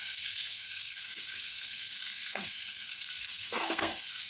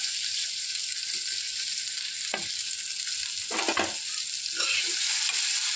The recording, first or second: second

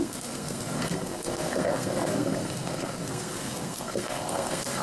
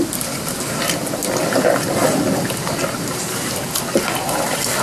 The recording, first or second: second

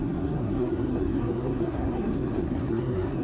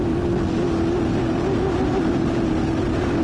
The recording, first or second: second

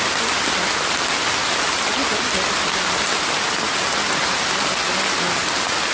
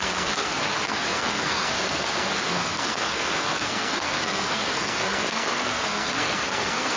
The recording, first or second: first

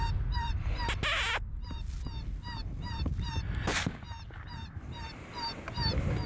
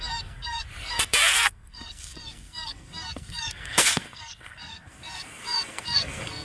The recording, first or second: first